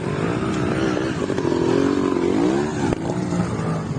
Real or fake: real